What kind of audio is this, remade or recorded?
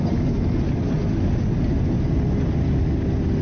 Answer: recorded